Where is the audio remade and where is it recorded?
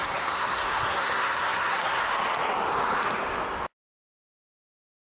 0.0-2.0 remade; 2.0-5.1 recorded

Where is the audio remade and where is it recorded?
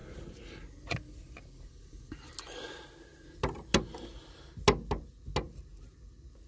0.0-6.5 recorded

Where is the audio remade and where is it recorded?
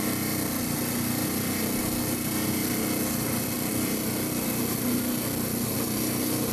0.0-6.5 recorded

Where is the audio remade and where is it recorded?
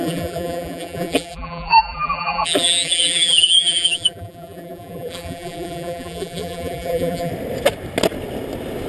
0.0-7.3 remade; 7.3-8.9 recorded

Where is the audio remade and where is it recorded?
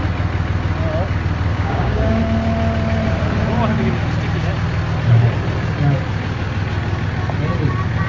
0.0-1.5 recorded; 1.5-2.2 remade; 2.2-8.1 recorded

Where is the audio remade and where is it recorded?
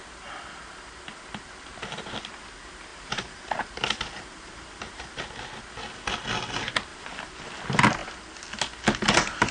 0.0-2.9 recorded; 2.9-5.2 remade; 5.2-6.9 recorded; 6.9-7.4 remade; 7.4-9.5 recorded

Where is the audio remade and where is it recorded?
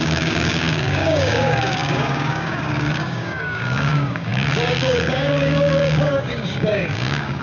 0.0-7.4 remade